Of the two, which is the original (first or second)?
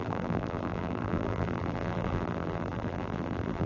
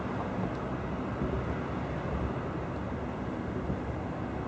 second